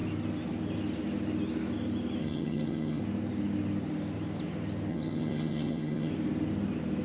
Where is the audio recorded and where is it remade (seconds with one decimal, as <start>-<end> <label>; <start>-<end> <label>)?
0.0-2.2 recorded; 2.2-3.0 remade; 3.0-4.9 recorded; 4.9-6.1 remade; 6.1-7.0 recorded